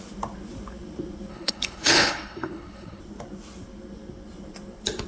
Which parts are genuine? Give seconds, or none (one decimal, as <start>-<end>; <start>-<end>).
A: 0.0-1.3; 3.0-5.1